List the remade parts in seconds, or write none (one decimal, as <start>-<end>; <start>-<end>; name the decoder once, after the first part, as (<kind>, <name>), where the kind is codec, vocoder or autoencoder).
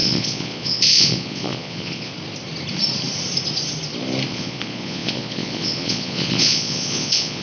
0.0-2.1 (vocoder, Vocos); 4.3-7.4